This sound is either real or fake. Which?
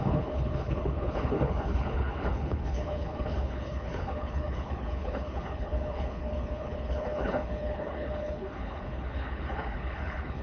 fake